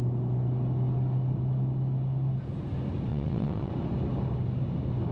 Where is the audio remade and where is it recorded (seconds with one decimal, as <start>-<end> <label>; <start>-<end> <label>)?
0.0-3.1 recorded; 3.1-3.7 remade; 3.7-5.1 recorded